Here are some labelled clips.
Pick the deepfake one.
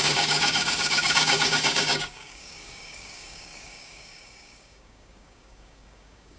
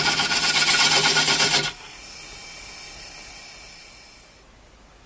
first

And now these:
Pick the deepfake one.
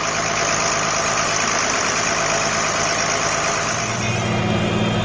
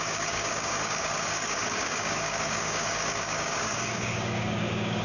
second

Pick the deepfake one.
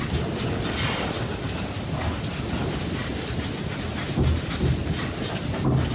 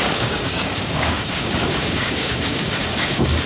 second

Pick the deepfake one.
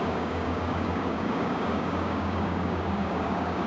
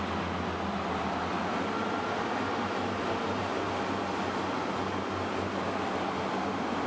first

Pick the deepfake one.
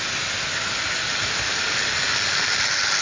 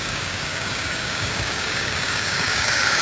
second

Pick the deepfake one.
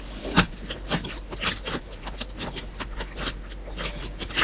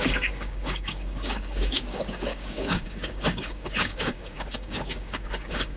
second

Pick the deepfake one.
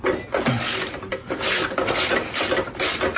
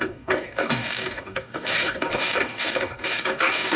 second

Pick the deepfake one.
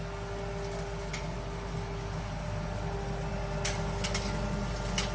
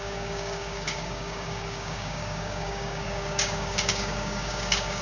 second